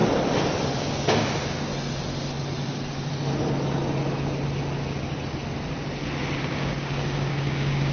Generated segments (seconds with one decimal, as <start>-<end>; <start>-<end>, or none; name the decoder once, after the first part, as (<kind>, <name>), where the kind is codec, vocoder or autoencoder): 0.8-1.7 (codec, DAC); 6.4-7.9